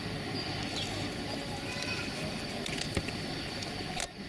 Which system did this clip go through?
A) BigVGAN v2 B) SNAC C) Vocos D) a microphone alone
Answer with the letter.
D